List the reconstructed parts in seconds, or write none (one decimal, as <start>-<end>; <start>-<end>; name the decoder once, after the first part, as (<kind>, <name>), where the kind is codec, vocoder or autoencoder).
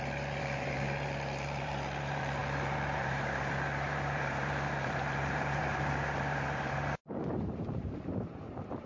0.0-8.9 (vocoder, BigVGAN v2)